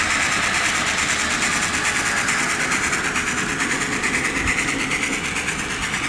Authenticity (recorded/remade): recorded